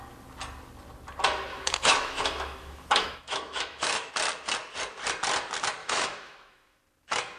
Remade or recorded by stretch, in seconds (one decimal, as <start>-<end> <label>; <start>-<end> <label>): 0.0-1.5 recorded; 1.5-4.1 remade; 4.1-5.8 recorded; 5.8-6.8 remade; 6.8-7.4 recorded